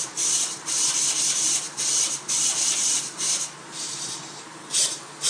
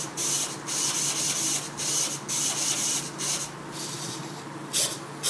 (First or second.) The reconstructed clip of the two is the first